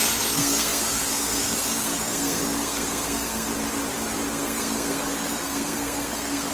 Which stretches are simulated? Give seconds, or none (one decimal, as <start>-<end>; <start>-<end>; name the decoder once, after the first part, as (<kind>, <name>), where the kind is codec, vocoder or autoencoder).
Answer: 0.0-3.5 (codec, SNAC); 4.3-6.5